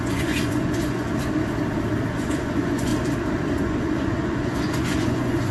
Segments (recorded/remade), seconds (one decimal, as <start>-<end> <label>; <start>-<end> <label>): 0.0-1.1 remade; 1.1-2.1 recorded; 2.1-2.9 remade; 2.9-3.6 recorded; 3.6-5.5 remade